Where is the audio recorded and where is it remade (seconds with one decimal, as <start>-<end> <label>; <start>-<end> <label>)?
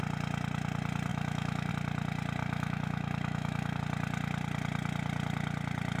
0.0-1.1 recorded; 1.1-1.7 remade; 1.7-2.4 recorded; 2.4-3.8 remade; 3.8-6.0 recorded